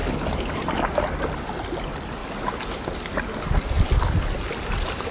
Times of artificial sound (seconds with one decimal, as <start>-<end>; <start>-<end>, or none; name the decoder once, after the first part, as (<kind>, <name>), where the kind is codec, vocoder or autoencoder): none